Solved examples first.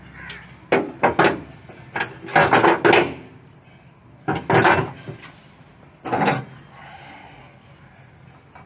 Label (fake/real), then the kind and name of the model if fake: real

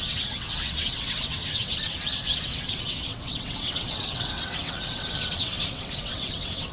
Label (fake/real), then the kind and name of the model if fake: fake, vocoder, WaveNeXt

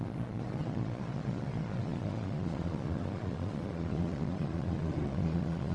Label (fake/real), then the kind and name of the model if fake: fake, vocoder, Vocos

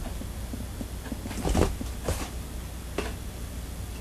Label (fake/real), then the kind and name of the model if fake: real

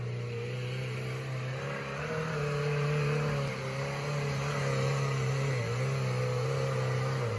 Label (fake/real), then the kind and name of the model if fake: real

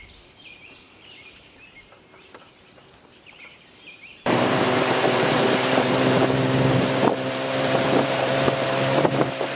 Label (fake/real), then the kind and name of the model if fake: fake, vocoder, BigVGAN v2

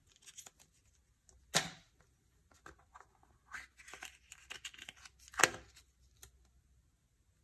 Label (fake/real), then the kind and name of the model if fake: real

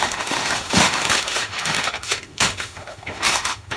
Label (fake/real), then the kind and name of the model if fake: fake, autoencoder, DAC-VAE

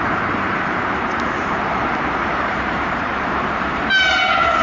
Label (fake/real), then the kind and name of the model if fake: fake, vocoder, BigVGAN v2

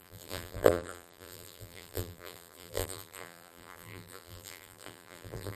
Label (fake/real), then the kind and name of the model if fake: fake, vocoder, BigVGAN v2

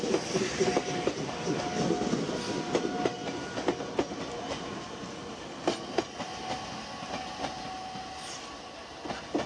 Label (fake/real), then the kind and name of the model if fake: real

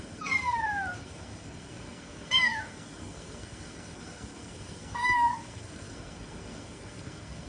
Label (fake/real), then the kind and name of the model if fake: fake, codec, SNAC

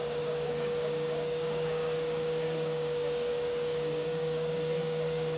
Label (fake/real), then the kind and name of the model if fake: fake, codec, DAC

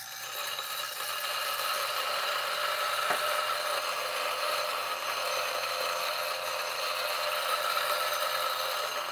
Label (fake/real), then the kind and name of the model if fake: real